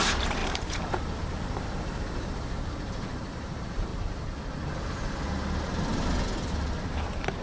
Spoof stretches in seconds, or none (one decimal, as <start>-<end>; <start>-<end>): 0.0-3.9; 6.5-7.4